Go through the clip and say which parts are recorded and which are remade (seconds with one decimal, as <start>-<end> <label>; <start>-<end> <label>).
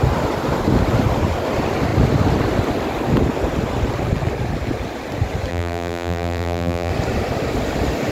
0.0-5.5 recorded; 5.5-6.9 remade; 6.9-8.1 recorded